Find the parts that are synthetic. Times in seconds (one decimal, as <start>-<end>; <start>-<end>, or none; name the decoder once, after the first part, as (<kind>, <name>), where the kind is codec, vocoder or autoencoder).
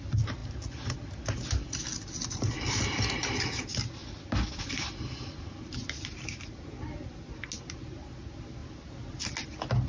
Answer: none